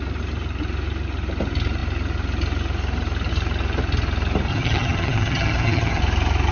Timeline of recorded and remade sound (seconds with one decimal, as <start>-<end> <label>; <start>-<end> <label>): 0.0-4.5 recorded; 4.5-6.0 remade; 6.0-6.5 recorded